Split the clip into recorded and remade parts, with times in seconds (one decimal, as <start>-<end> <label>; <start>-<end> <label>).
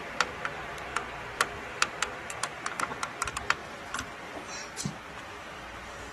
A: 0.0-6.1 recorded